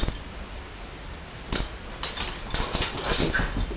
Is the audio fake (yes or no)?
no